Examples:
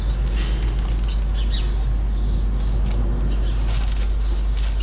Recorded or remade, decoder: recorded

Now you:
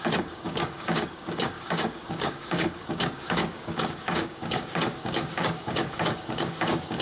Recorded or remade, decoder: remade, codec, DAC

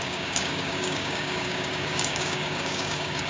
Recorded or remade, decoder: remade, codec, DAC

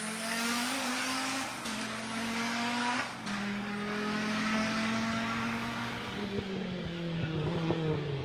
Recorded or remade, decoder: remade, codec, DAC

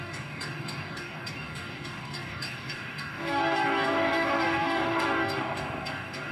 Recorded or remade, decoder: remade, codec, DAC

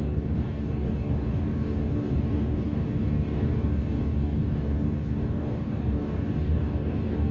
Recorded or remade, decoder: remade, codec, DAC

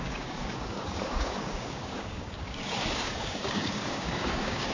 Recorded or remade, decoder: remade, codec, DAC